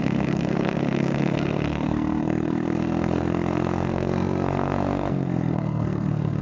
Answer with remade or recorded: remade